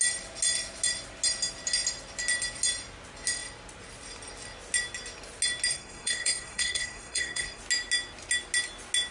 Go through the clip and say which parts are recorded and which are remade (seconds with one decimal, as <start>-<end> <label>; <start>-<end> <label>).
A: 0.0-5.7 recorded; 5.7-7.6 remade; 7.6-9.1 recorded